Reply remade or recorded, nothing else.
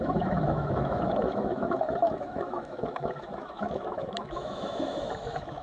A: remade